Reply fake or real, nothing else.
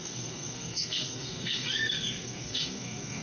fake